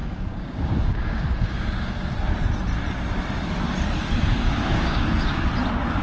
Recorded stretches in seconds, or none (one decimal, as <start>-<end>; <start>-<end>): 1.9-4.3; 5.5-6.0